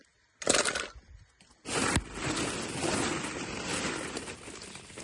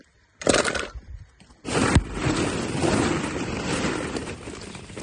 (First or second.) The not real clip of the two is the second